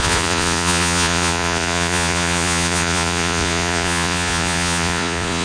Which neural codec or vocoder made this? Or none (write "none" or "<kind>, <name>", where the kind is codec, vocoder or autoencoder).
vocoder, Vocos